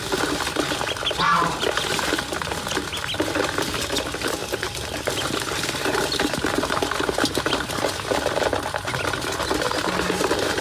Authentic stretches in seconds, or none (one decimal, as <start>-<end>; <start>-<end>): 0.0-10.6